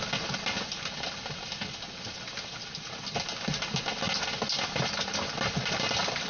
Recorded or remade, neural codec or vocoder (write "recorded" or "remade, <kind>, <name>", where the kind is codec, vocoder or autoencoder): recorded